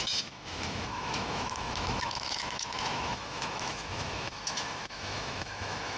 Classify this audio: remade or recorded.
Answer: remade